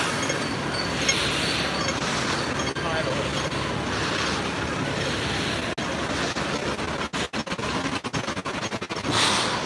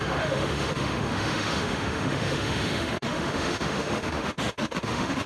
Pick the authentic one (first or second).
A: first